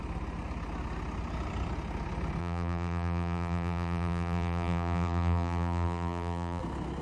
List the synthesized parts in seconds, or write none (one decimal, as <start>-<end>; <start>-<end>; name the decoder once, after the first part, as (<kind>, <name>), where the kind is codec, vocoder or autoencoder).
2.4-6.6 (vocoder, BigVGAN v2)

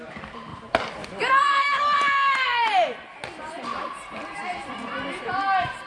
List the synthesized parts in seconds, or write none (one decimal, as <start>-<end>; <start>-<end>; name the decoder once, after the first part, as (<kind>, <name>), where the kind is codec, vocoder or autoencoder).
0.0-0.5 (vocoder, BigVGAN v2); 1.4-3.2; 3.9-5.9